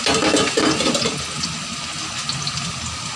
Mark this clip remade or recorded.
recorded